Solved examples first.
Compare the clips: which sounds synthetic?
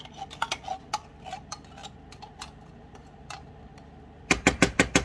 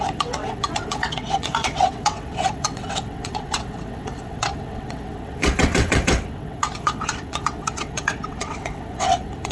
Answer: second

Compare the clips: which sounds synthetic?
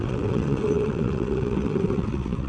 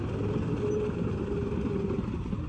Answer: first